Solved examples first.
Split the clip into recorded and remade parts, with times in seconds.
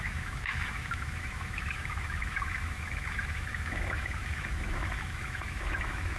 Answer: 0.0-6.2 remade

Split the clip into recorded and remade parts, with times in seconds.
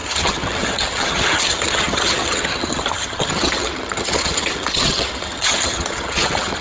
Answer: 0.0-6.6 remade